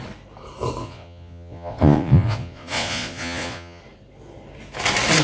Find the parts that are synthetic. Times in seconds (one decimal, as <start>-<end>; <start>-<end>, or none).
0.8-3.8